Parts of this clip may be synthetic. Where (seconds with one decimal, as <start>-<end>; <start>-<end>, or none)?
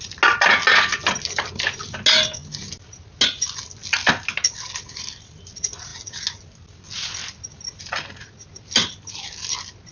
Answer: none